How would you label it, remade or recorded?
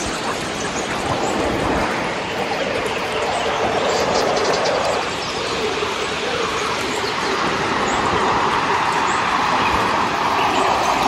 remade